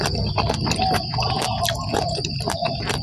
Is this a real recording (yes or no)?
yes